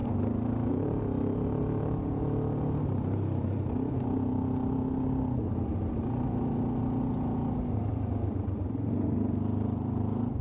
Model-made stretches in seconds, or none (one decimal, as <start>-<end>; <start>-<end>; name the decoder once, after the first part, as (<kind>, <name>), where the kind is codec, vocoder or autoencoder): none